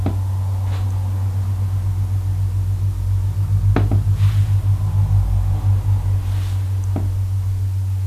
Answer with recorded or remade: recorded